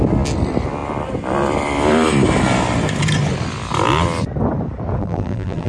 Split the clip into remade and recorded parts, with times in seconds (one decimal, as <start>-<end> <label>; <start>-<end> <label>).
0.0-5.0 recorded; 5.0-5.7 remade